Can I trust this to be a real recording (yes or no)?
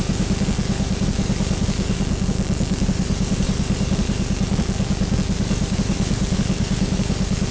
no